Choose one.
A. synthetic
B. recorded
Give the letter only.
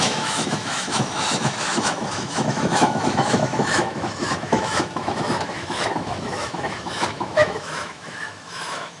A